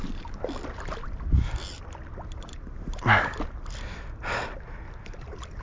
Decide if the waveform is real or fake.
real